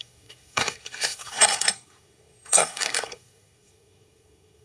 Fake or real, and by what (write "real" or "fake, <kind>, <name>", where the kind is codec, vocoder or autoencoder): fake, codec, SNAC